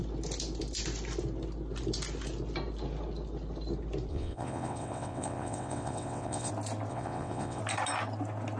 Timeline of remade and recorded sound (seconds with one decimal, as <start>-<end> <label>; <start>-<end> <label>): 0.0-4.1 recorded; 4.1-6.5 remade; 6.5-6.9 recorded; 6.9-7.6 remade; 7.6-8.6 recorded